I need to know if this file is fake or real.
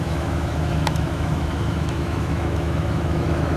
fake